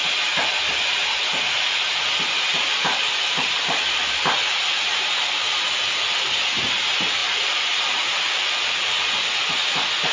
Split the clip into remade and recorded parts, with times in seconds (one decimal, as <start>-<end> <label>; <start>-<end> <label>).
0.0-2.5 recorded; 2.5-4.6 remade; 4.6-7.2 recorded; 7.2-9.1 remade; 9.1-10.1 recorded